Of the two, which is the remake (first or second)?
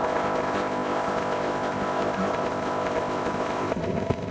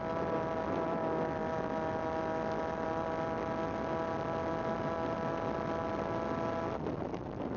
first